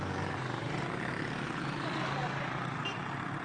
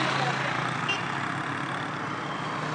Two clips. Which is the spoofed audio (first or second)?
first